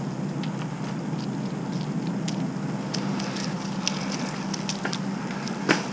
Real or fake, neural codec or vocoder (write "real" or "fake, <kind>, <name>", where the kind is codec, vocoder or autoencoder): real